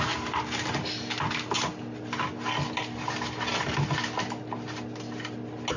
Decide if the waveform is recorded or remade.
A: recorded